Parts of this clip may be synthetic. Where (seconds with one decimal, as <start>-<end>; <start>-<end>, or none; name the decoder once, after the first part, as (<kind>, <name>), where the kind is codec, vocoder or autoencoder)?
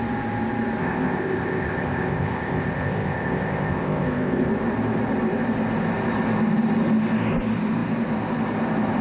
0.8-4.5 (codec, ZipCodec)